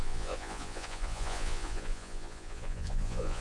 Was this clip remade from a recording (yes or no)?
yes